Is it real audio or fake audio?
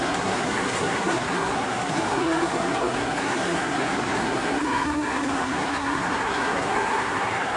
fake